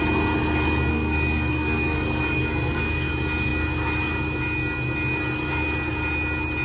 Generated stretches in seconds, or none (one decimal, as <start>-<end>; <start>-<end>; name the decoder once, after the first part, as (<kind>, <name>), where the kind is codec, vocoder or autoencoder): 0.9-3.1 (codec, SNAC)

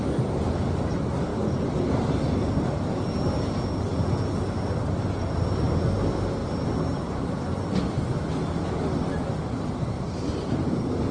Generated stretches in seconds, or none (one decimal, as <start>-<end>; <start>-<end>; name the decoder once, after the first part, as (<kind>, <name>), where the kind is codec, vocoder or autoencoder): none

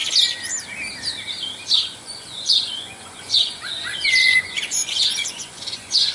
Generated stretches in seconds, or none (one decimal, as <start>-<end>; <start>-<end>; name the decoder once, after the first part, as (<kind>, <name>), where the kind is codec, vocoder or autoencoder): 2.0-6.1 (vocoder, Vocos)

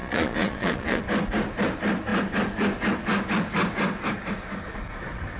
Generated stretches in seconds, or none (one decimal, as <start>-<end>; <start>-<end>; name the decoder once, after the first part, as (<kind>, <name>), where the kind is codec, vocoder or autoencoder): 0.0-1.0 (vocoder, Vocos)

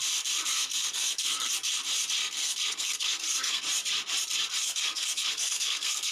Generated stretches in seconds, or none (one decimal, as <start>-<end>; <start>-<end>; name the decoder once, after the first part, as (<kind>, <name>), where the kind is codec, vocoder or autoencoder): 0.5-1.5 (codec, SNAC); 2.2-3.6; 4.6-6.1

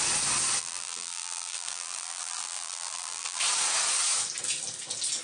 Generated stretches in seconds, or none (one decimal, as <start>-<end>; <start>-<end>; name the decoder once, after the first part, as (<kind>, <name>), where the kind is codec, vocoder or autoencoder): 0.6-3.4 (vocoder, BigVGAN v2)

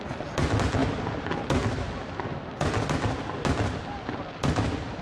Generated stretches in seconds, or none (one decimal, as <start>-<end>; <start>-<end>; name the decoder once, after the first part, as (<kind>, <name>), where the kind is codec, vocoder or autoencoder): none